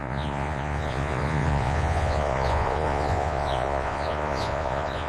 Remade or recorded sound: remade